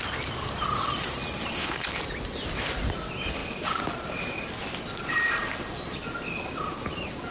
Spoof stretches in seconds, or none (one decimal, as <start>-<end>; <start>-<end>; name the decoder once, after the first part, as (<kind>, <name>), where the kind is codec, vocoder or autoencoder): 1.5-2.0 (codec, HILCodec)